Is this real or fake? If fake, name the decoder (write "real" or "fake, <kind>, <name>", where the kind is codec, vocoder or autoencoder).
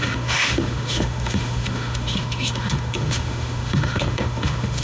fake, autoencoder, DAC-VAE